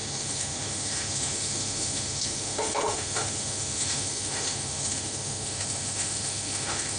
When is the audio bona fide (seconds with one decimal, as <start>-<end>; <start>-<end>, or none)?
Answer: none